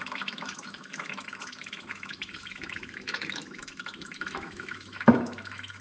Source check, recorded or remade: remade